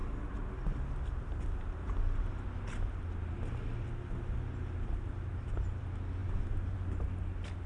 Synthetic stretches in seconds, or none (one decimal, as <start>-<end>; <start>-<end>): 6.2-6.9